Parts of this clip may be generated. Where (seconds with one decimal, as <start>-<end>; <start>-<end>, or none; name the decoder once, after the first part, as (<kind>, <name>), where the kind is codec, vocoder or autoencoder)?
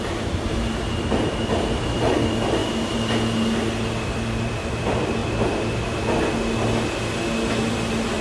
0.0-2.6 (vocoder, BigVGAN v2); 4.0-5.2; 7.6-8.2